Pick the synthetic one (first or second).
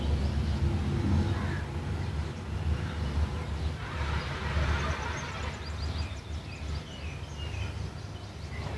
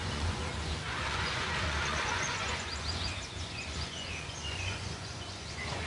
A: second